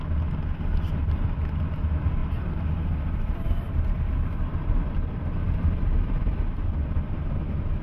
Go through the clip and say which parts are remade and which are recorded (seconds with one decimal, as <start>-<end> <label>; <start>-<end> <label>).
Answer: 0.0-1.0 recorded; 1.0-1.6 remade; 1.6-2.2 recorded; 2.2-5.3 remade; 5.3-7.8 recorded